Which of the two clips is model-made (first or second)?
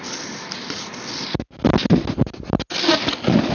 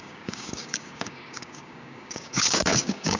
second